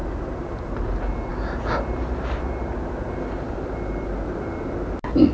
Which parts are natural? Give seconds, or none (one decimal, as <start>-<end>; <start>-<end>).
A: 0.0-5.3